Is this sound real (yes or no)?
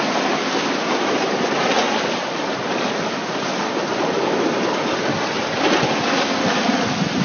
yes